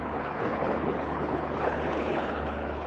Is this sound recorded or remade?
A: remade